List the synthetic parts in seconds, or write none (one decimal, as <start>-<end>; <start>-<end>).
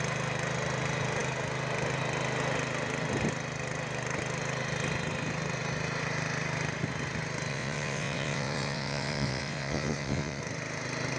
7.5-10.4